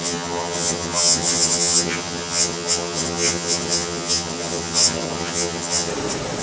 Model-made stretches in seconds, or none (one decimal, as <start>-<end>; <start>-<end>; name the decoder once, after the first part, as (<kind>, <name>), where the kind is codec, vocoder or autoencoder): 0.0-5.9 (vocoder, HiFi-GAN)